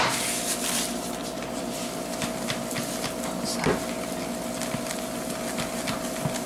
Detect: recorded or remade recorded